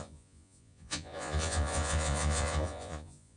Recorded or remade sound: remade